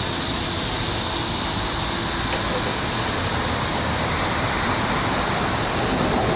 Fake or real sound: real